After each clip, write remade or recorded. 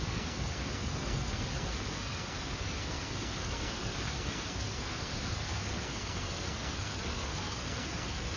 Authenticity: remade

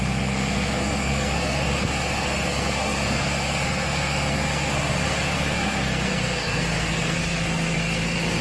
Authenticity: remade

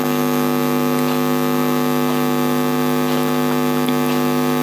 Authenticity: recorded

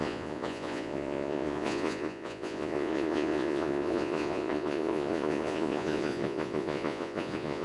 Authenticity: remade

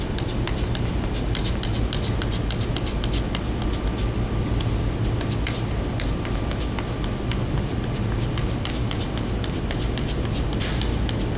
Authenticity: recorded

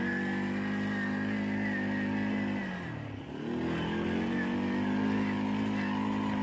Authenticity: recorded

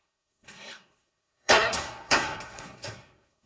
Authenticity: remade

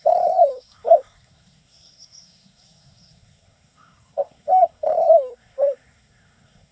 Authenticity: remade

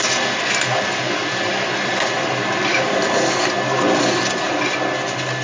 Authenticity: recorded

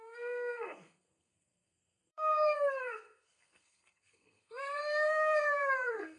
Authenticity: remade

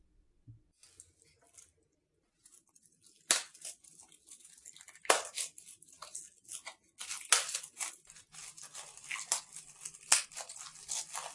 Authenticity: recorded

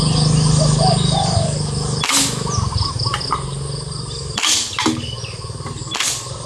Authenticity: recorded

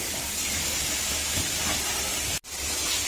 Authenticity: recorded